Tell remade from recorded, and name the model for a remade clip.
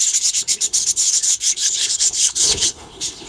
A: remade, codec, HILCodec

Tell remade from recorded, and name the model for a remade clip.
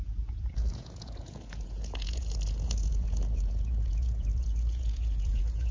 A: remade, vocoder, Vocos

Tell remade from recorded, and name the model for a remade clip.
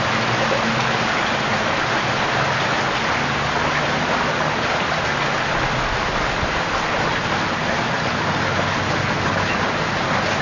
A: recorded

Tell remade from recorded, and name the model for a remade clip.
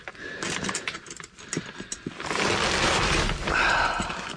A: recorded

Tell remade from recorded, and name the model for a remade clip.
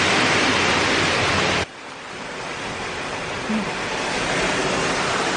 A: recorded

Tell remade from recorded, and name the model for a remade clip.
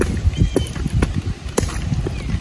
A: recorded